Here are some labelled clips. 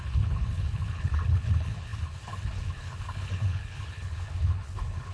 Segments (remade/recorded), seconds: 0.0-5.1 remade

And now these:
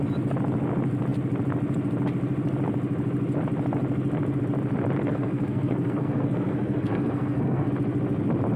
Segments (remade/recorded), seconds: 0.0-5.0 recorded; 5.0-7.7 remade; 7.7-8.6 recorded

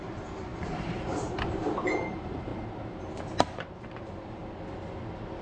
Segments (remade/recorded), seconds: 0.0-2.5 remade; 2.5-3.6 recorded; 3.6-4.4 remade; 4.4-5.4 recorded

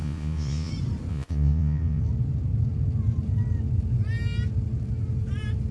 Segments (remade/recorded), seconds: 0.0-0.7 remade; 0.7-1.1 recorded; 1.1-2.0 remade; 2.0-5.7 recorded

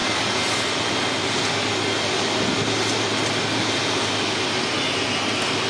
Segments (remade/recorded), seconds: 0.0-5.7 recorded